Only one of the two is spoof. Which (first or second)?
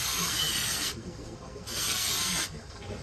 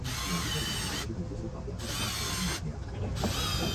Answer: first